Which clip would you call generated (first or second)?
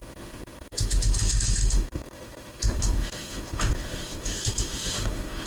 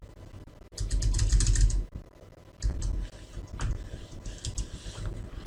first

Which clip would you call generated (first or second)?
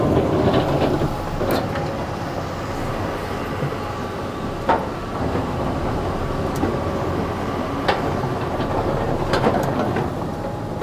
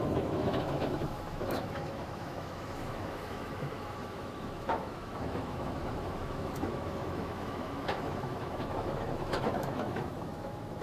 second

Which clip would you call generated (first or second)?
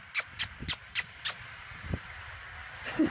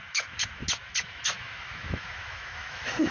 second